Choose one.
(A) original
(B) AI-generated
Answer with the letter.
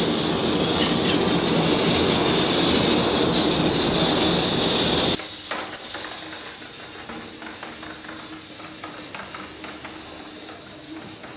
A